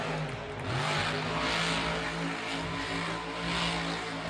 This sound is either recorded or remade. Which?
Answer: recorded